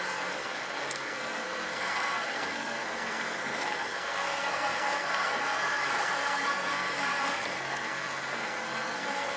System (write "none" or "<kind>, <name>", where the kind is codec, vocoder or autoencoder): codec, SNAC